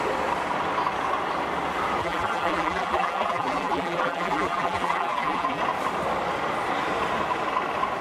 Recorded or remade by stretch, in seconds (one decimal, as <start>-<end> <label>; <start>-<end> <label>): 0.0-2.0 recorded; 2.0-5.6 remade; 5.6-8.0 recorded